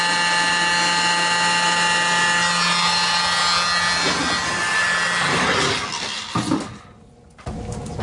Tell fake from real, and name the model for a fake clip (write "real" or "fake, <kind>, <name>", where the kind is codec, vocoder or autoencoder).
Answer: real